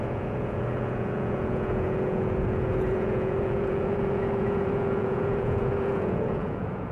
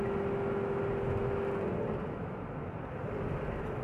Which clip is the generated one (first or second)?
first